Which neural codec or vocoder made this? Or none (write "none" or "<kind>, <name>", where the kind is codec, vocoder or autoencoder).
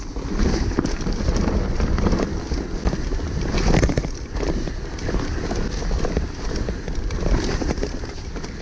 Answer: none